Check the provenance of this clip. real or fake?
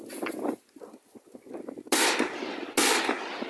real